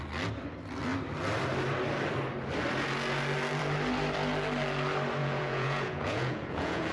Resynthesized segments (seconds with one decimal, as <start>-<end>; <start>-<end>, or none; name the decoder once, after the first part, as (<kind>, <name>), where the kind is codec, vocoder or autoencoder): 5.2-6.9 (vocoder, Vocos)